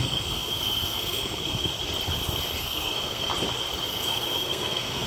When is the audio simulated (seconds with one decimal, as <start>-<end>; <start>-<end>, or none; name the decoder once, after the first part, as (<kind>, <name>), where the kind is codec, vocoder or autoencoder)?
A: 0.0-1.7 (codec, SNAC); 2.6-3.3; 3.9-5.1